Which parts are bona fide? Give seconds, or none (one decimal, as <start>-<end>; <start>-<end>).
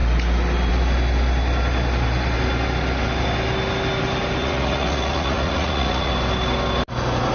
0.0-4.4; 6.1-7.3